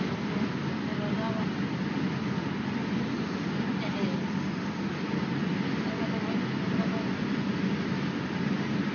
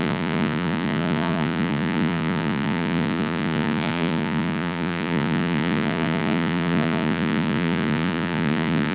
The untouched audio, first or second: first